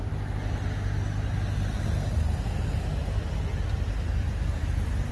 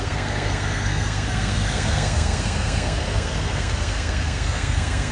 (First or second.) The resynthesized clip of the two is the second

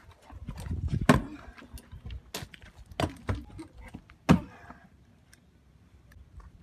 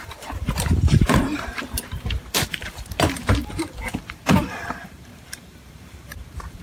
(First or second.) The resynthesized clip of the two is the second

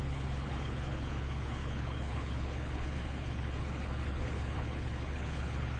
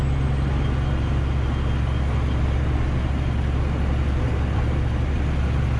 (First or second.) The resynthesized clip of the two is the first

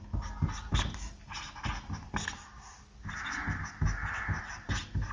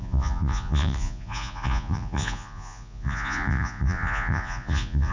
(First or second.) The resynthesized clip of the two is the second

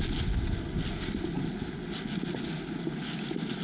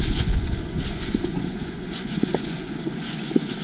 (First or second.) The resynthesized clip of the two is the second